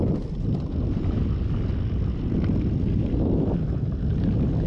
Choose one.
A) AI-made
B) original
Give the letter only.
B